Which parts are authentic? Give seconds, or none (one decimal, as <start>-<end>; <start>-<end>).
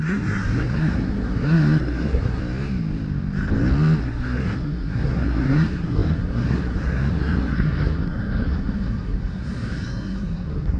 2.4-4.0